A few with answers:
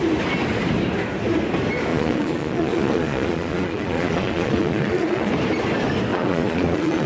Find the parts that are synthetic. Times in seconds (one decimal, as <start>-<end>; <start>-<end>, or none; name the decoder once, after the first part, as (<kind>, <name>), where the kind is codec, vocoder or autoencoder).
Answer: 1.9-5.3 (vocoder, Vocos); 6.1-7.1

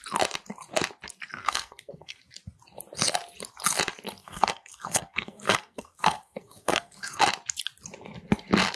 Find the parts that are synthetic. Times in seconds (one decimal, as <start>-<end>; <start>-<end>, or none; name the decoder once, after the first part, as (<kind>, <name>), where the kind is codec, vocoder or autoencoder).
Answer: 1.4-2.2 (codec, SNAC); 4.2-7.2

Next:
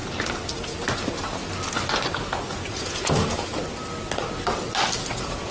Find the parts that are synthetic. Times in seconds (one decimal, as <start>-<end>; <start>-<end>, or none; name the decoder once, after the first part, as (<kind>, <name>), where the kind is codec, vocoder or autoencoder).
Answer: 2.5-3.5 (vocoder, Vocos); 5.1-5.5

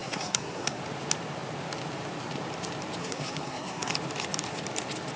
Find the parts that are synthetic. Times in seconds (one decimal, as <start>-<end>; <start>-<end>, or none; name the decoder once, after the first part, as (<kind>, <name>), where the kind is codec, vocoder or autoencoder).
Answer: 0.0-0.8 (codec, SNAC); 3.0-3.9

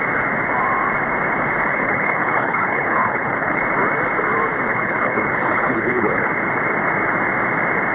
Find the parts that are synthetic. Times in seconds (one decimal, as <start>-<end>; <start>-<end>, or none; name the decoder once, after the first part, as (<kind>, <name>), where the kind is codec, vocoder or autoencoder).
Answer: 1.7-3.6 (codec, HILCodec); 4.7-6.3

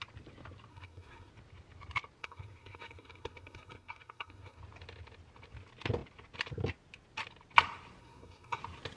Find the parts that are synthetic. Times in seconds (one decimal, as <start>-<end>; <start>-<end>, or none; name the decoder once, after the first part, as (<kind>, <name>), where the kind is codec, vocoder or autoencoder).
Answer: 0.7-1.3 (codec, SNAC); 2.2-4.6; 8.0-8.6